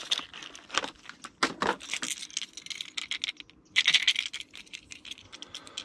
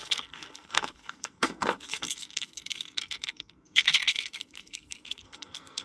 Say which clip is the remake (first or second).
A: second